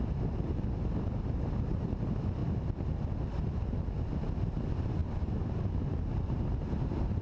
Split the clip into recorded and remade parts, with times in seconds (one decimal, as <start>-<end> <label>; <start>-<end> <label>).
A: 0.0-2.4 remade; 2.4-4.3 recorded; 4.3-7.2 remade